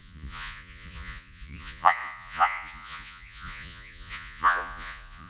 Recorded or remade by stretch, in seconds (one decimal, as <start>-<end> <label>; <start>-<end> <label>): 0.0-5.3 remade